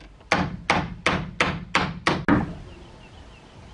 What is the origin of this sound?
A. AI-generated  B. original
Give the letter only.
B